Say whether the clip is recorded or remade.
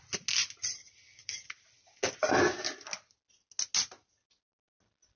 recorded